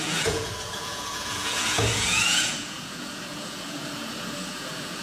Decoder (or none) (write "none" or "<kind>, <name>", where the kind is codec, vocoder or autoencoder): vocoder, Vocos